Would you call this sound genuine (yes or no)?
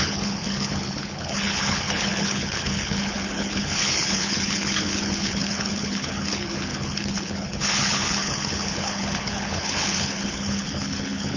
no